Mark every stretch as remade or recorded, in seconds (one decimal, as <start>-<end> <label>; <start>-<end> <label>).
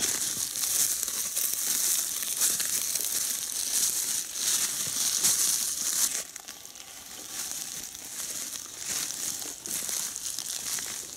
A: 0.0-11.2 recorded